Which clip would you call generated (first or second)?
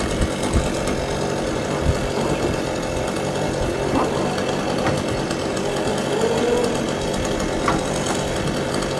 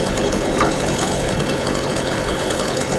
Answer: second